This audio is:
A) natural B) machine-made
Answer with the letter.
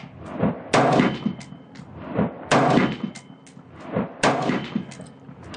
A